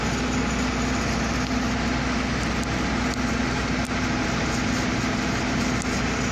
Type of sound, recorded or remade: recorded